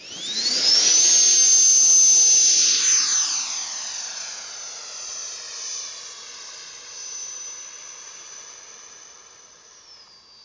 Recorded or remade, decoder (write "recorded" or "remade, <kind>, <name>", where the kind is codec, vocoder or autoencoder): recorded